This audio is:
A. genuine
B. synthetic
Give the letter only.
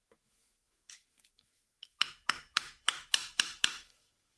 B